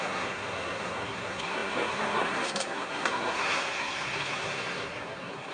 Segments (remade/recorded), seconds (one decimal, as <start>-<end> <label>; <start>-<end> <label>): 0.0-5.5 remade